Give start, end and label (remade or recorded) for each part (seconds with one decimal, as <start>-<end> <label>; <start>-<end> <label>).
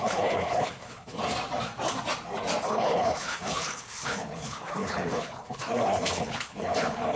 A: 0.0-1.2 remade; 1.2-2.7 recorded; 2.7-7.2 remade